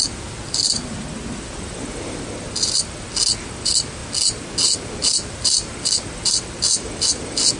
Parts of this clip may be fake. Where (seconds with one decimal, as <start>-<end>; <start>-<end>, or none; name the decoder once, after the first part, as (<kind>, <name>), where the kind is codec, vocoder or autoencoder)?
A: none